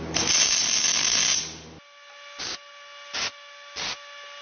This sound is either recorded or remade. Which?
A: recorded